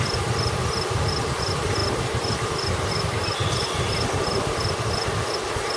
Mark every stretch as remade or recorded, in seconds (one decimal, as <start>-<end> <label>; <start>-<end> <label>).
0.0-5.8 recorded

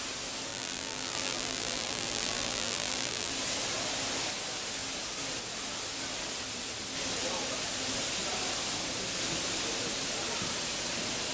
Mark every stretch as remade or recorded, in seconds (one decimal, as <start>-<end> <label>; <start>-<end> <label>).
0.0-0.5 recorded; 0.5-3.3 remade; 3.3-11.3 recorded

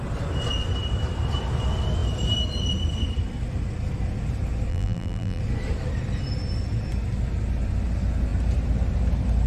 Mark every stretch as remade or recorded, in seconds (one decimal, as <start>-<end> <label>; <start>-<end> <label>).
0.0-4.7 recorded; 4.7-5.4 remade; 5.4-9.5 recorded

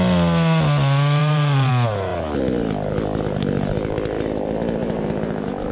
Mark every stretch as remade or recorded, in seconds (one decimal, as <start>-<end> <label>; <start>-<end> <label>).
0.0-1.2 recorded; 1.2-1.7 remade; 1.7-4.8 recorded; 4.8-5.7 remade

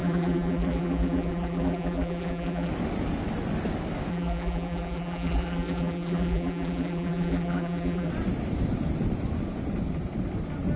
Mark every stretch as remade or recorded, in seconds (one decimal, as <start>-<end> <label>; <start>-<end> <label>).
0.0-2.7 remade; 2.7-4.1 recorded; 4.1-8.1 remade; 8.1-10.8 recorded

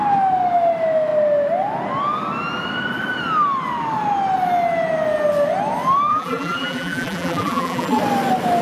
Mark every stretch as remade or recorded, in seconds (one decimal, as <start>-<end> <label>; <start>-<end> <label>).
0.0-6.1 recorded; 6.1-8.0 remade; 8.0-8.6 recorded

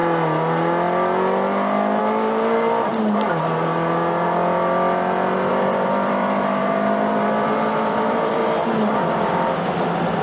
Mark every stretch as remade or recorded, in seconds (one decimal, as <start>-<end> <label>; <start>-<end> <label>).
0.0-2.0 recorded; 2.0-2.9 remade; 2.9-5.5 recorded; 5.5-8.4 remade; 8.4-10.2 recorded